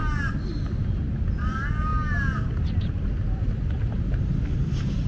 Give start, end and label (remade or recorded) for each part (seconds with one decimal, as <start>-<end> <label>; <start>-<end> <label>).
0.0-5.1 recorded

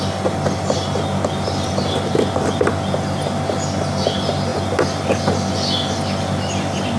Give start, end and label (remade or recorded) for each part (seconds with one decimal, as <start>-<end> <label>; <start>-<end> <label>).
0.0-7.0 recorded

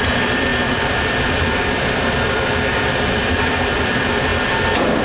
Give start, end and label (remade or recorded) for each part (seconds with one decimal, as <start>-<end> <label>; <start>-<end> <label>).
0.0-5.0 remade

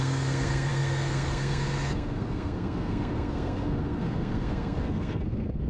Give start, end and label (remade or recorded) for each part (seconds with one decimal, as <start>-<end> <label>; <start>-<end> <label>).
0.0-5.7 remade

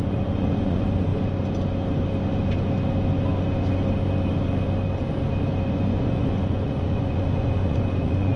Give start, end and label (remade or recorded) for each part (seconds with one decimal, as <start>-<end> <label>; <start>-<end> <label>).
0.0-1.1 remade; 1.1-5.7 recorded; 5.7-8.4 remade

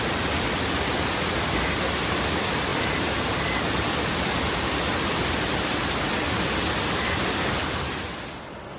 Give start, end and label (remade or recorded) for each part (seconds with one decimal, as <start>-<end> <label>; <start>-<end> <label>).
0.0-8.8 recorded

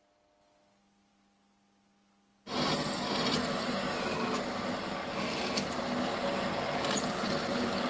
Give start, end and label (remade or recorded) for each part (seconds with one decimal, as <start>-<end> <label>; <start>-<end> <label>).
0.0-7.9 recorded